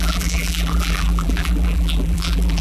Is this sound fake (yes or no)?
yes